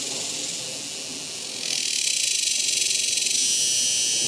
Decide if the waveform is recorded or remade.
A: recorded